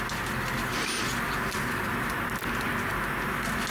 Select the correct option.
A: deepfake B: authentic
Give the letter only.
B